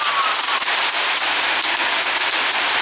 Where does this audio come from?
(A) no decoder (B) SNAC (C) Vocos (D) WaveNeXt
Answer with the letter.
A